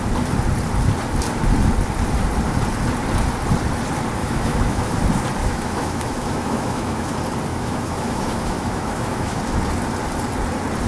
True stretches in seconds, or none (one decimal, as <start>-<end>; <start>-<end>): 0.0-4.2; 5.0-5.4; 7.1-7.5; 9.4-10.9

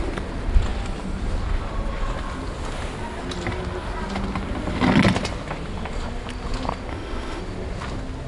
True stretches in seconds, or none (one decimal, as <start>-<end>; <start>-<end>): 0.0-6.9; 7.4-8.3

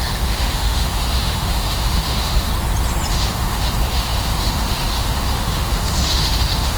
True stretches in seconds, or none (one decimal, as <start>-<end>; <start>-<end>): 2.5-3.1

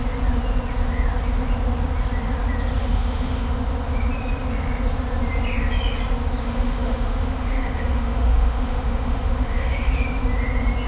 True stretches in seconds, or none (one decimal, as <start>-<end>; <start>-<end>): 0.0-2.8; 3.5-6.4; 9.9-10.9

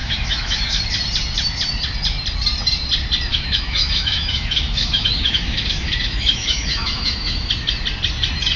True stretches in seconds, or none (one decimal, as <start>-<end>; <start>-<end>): 0.8-3.3; 7.5-8.6

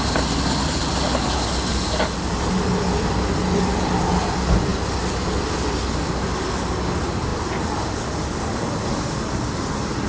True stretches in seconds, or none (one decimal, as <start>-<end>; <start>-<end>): 0.0-10.1

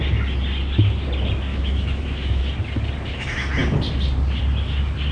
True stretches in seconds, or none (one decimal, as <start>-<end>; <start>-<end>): 0.0-1.5; 2.4-5.1

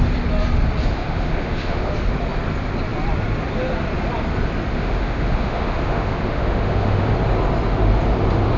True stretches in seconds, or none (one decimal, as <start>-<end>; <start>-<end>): 0.0-0.9; 1.9-4.7; 7.0-8.6